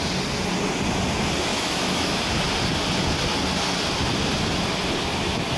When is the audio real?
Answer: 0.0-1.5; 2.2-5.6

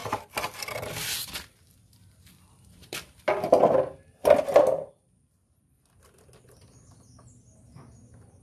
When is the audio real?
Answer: 3.5-8.4